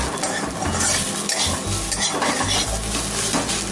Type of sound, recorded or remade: recorded